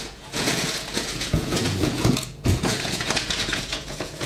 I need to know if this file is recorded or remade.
remade